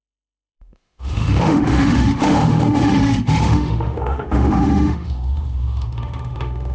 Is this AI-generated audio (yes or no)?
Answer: yes